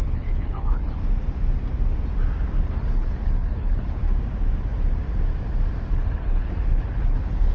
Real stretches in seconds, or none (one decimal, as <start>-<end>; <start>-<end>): 1.0-2.6; 4.0-5.9